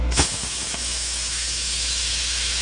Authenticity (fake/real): fake